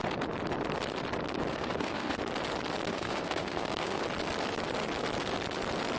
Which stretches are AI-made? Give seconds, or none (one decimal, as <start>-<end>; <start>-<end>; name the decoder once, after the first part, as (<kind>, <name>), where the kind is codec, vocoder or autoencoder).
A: 1.5-2.2 (codec, SNAC); 2.9-4.0